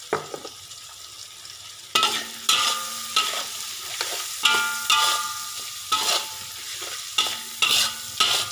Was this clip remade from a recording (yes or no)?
no